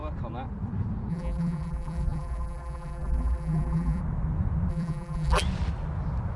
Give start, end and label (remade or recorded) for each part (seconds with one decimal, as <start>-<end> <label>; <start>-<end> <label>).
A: 0.0-1.1 recorded; 1.1-4.0 remade; 4.0-4.7 recorded; 4.7-5.4 remade; 5.4-6.4 recorded